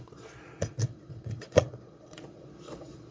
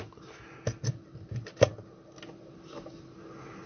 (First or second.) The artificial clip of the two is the first